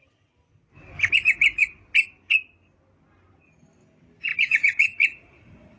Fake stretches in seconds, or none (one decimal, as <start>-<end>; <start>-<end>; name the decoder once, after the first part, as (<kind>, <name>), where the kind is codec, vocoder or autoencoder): 4.3-5.8 (vocoder, Vocos)